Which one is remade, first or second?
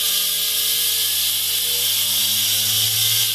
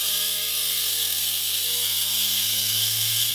second